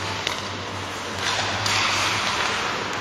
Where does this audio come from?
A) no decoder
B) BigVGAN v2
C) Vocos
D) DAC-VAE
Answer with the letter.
A